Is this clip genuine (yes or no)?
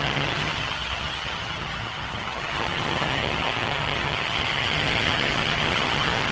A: no